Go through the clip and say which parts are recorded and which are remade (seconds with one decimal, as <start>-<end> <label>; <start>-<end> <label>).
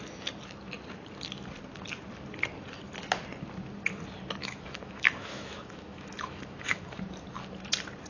0.0-4.4 recorded; 4.4-7.0 remade; 7.0-8.1 recorded